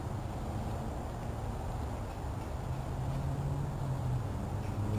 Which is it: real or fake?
real